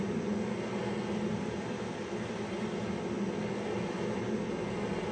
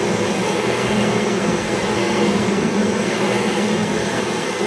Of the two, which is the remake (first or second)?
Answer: second